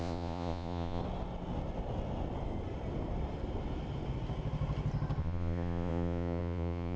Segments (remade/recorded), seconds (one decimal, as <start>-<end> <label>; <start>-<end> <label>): 0.0-1.0 remade; 1.0-5.2 recorded; 5.2-7.0 remade